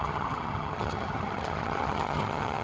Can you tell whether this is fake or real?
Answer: fake